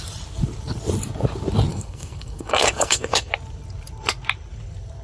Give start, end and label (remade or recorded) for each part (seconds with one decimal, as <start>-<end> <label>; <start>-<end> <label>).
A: 0.0-1.7 recorded; 1.7-3.3 remade; 3.3-5.0 recorded